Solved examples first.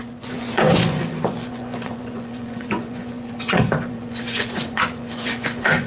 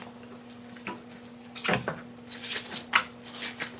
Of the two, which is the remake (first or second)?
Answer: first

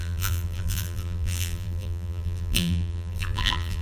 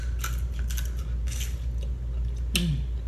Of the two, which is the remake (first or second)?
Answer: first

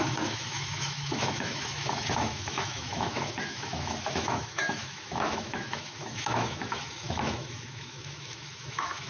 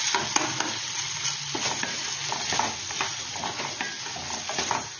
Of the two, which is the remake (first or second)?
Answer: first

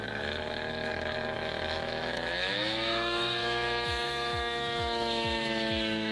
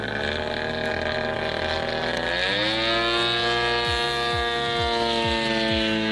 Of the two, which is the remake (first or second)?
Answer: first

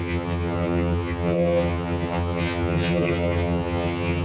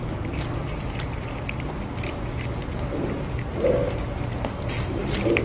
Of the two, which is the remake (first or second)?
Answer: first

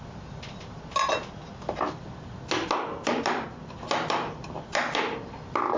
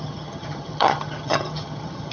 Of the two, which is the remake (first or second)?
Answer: second